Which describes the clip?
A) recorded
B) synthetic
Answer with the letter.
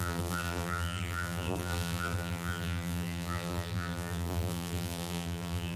B